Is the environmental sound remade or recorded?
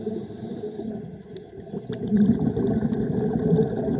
recorded